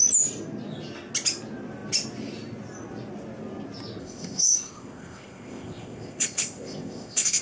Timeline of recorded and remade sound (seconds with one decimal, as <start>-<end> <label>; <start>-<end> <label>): 0.0-4.0 recorded; 4.0-7.4 remade